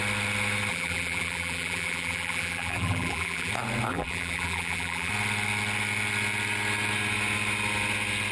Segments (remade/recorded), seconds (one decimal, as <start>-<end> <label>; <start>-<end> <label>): 0.0-0.7 recorded; 0.7-3.5 remade; 3.5-3.9 recorded; 3.9-5.1 remade; 5.1-8.3 recorded